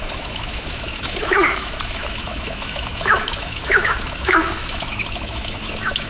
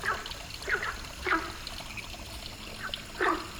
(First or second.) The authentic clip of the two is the second